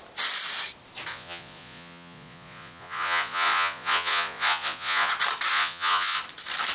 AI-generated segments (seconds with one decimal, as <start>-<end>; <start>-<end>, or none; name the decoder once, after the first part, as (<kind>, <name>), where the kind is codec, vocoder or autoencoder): 1.1-5.1 (vocoder, Vocos); 5.5-6.2